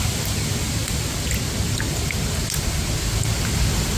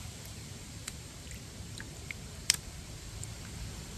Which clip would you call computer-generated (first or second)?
second